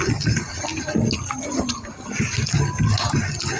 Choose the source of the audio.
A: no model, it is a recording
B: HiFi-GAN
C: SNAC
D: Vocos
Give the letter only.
A